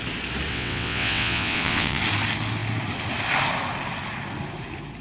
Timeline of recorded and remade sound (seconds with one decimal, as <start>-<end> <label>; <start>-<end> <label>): 0.0-0.5 recorded; 0.5-2.0 remade; 2.0-5.0 recorded